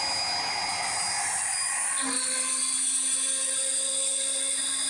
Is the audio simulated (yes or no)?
no